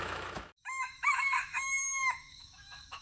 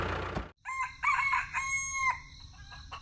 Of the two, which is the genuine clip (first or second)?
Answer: second